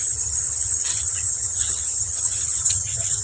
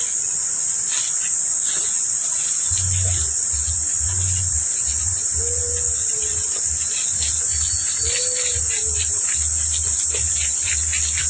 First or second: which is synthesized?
first